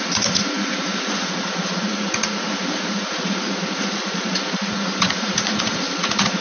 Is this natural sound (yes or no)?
no